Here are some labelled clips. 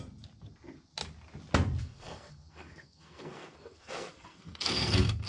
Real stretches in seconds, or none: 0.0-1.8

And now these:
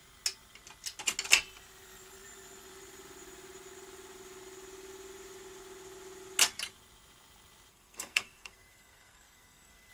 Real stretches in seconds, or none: 0.0-7.7

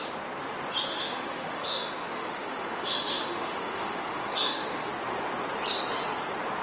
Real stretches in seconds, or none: 0.0-0.9; 4.9-6.6

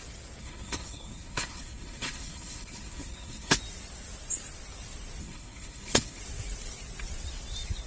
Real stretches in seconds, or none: 0.0-0.4; 3.6-5.2; 6.2-7.9

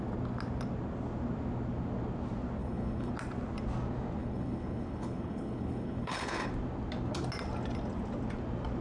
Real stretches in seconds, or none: 0.0-2.6; 3.1-4.2; 6.5-8.8

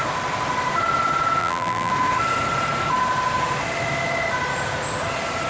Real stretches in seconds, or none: 0.0-1.4; 1.9-5.5

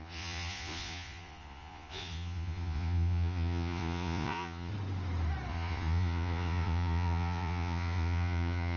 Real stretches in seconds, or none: 4.7-5.5

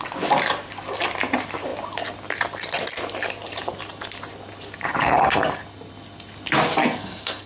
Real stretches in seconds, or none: 0.0-6.8